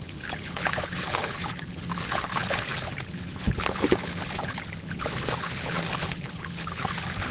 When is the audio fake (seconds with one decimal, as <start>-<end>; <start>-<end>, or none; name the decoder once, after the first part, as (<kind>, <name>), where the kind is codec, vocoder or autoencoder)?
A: 0.0-7.3 (codec, HILCodec)